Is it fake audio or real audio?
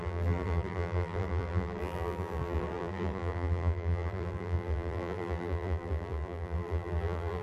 fake